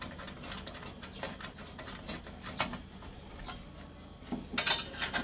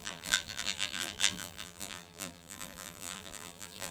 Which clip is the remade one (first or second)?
second